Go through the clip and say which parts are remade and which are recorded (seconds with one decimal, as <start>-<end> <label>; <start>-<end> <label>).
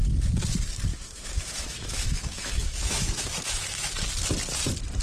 0.0-0.9 recorded; 0.9-3.9 remade; 3.9-5.0 recorded